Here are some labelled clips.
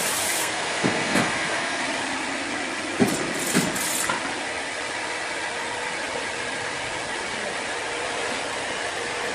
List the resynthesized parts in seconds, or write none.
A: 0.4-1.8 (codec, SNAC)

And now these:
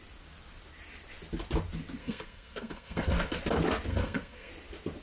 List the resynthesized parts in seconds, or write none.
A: 2.0-3.4 (codec, SNAC); 3.9-4.5

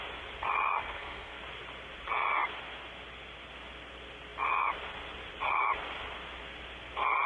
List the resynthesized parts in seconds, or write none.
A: 0.8-1.4 (codec, SNAC)

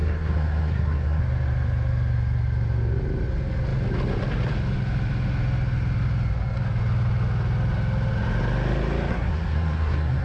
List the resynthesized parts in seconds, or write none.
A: 0.0-1.2 (codec, SNAC); 9.1-10.2